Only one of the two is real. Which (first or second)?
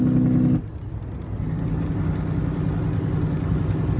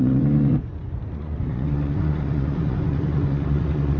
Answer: first